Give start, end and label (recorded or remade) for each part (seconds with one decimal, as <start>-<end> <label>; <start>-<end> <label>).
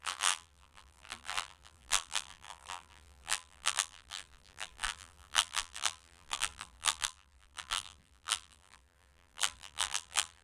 0.0-10.4 remade